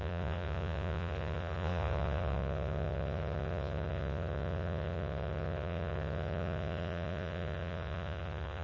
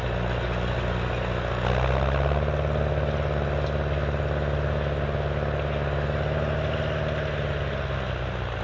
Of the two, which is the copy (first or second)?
first